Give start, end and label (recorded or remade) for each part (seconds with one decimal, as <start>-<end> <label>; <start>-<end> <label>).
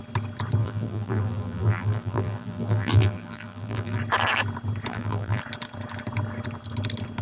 0.0-0.6 recorded; 0.6-4.0 remade; 4.0-4.9 recorded; 4.9-5.4 remade; 5.4-7.2 recorded